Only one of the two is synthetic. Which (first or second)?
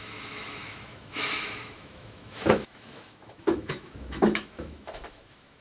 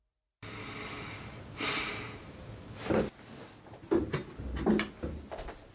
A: first